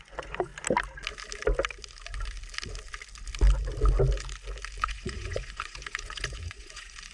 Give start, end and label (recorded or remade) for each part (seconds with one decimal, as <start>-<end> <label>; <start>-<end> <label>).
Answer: 0.0-0.5 remade; 0.5-4.8 recorded; 4.8-7.1 remade